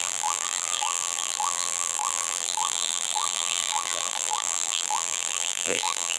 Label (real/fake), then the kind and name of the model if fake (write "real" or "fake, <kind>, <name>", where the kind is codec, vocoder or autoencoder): fake, vocoder, BigVGAN v2